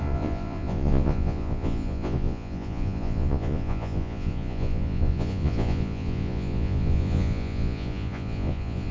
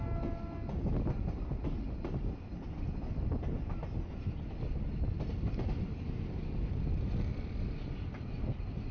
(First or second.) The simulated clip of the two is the first